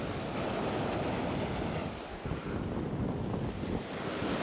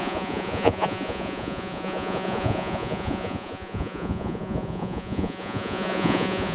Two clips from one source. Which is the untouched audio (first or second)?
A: first